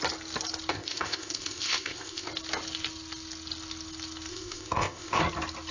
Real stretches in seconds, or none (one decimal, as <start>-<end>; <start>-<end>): 0.0-0.7; 2.3-4.3; 5.2-5.7